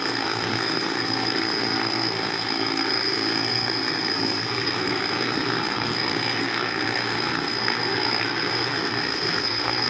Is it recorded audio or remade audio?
remade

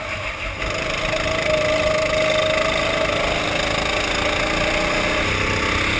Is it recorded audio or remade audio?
recorded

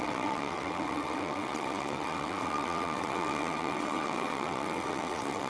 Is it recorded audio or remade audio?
remade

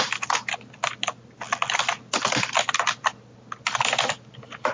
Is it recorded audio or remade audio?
recorded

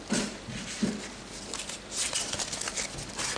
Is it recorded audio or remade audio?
recorded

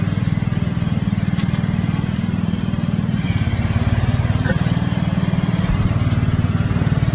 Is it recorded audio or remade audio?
remade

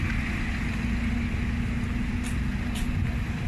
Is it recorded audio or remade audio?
recorded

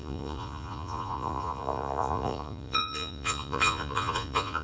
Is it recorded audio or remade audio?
remade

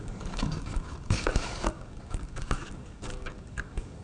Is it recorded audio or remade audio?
remade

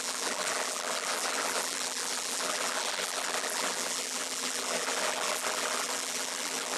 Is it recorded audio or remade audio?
remade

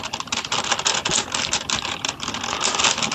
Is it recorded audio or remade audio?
recorded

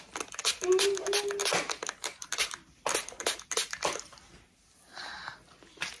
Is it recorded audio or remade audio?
recorded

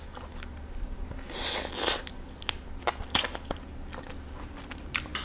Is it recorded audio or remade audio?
recorded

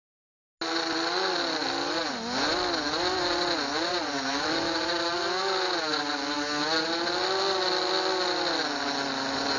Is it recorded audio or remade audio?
recorded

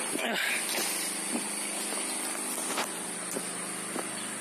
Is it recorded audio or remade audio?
recorded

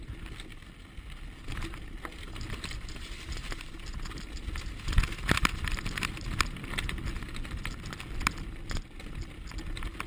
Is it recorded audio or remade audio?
recorded